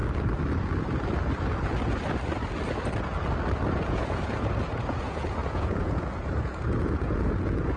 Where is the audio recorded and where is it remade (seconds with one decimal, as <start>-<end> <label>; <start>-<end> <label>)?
0.0-3.7 recorded; 3.7-7.8 remade